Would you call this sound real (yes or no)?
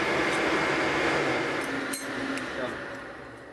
yes